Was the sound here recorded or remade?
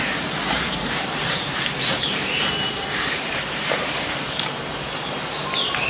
remade